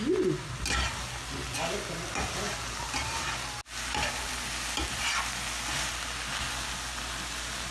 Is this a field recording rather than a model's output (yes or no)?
yes